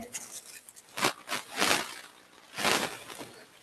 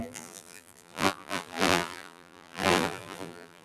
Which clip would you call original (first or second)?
first